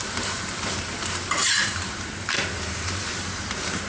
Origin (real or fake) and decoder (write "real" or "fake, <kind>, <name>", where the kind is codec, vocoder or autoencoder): fake, vocoder, BigVGAN v2